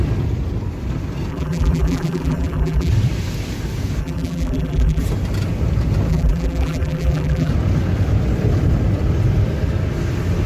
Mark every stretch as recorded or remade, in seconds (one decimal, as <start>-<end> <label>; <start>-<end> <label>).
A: 0.0-1.3 recorded; 1.3-2.9 remade; 2.9-4.0 recorded; 4.0-5.0 remade; 5.0-6.1 recorded; 6.1-7.5 remade; 7.5-10.5 recorded